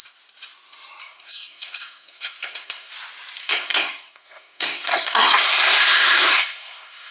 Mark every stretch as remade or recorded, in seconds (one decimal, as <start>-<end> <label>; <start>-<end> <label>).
0.0-1.0 recorded; 1.0-2.9 remade; 2.9-3.4 recorded; 3.4-7.1 remade